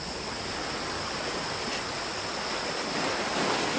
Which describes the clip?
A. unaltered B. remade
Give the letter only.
A